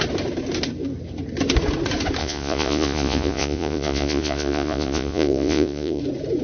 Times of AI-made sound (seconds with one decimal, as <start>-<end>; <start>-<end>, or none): 2.2-6.0